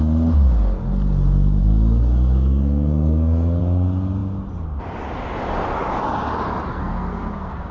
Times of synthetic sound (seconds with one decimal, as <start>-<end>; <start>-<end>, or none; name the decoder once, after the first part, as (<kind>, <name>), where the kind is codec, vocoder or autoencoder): 1.6-3.6 (codec, SNAC); 6.7-7.7